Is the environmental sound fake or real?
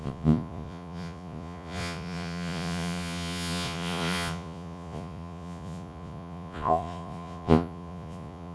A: fake